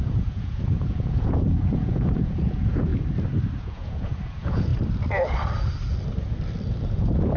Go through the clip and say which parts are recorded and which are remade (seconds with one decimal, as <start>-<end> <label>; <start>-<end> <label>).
0.0-2.9 remade; 2.9-3.6 recorded; 3.6-4.7 remade; 4.7-6.8 recorded; 6.8-7.4 remade